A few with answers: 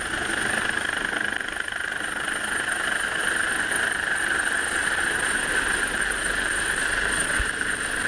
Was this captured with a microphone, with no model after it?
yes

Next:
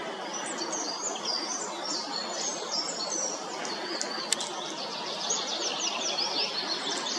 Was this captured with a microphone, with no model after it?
yes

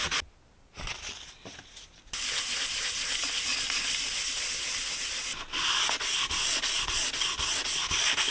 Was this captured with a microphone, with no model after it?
yes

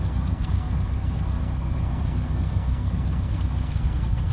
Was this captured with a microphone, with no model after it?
no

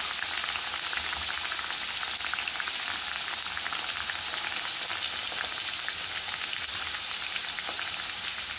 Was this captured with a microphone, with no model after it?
yes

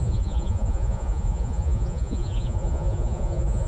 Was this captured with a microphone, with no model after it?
no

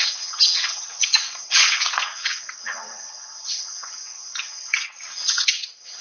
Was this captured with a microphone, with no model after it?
no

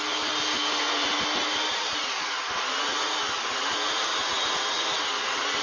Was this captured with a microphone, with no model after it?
yes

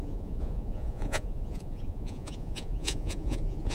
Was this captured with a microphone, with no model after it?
no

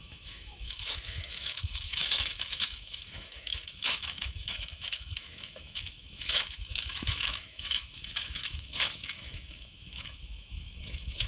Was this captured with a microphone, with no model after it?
no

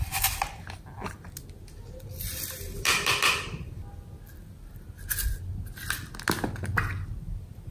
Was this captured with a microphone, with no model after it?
yes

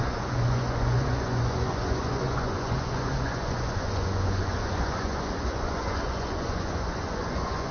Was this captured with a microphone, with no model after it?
no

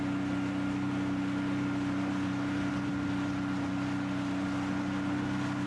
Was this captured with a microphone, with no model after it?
yes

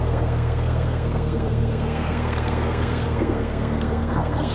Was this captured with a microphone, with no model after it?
no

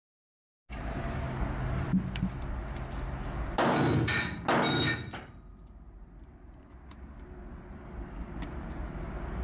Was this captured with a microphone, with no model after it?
yes